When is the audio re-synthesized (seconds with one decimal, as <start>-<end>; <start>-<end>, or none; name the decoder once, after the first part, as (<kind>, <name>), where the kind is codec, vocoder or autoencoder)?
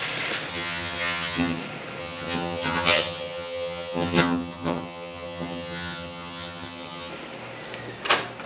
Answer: 0.5-1.6 (vocoder, HiFi-GAN); 2.0-7.1